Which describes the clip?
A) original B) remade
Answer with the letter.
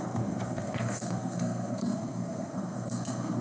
B